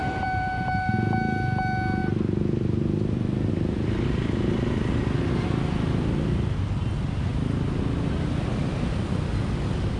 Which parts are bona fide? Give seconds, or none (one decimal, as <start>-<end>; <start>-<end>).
0.9-10.0